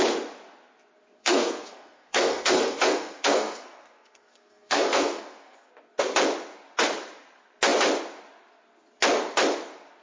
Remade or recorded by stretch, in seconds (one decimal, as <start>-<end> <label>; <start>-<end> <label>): 0.0-1.2 recorded; 1.2-5.7 remade; 5.7-10.0 recorded